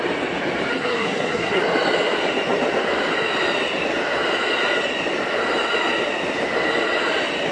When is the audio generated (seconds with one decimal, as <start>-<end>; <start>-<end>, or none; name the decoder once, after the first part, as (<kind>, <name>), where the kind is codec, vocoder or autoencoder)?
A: 0.7-1.6 (codec, SNAC)